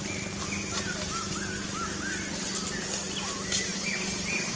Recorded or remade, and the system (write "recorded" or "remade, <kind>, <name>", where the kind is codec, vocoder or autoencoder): recorded